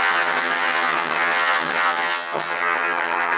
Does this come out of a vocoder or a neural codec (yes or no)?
yes